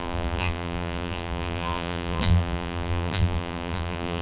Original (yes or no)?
no